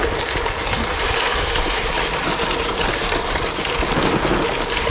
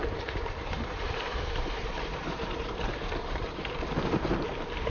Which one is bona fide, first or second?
first